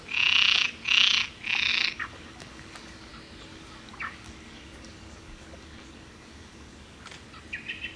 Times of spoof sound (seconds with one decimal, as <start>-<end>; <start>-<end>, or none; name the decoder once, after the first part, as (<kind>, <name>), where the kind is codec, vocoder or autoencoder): 1.7-3.1 (codec, DAC); 3.5-7.0